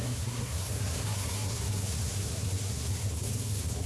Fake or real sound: fake